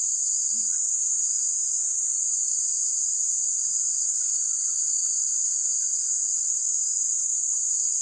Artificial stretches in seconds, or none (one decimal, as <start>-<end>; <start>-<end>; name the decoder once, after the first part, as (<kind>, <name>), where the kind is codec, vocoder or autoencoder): 0.0-2.5 (vocoder, BigVGAN v2); 3.6-5.4; 6.5-8.0